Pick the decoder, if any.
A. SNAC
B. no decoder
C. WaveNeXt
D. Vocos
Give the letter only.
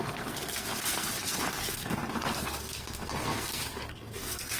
A